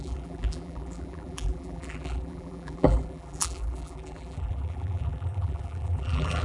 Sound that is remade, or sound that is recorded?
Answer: remade